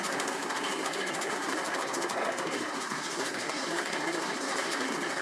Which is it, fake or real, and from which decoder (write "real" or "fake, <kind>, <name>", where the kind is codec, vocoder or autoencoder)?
fake, codec, SNAC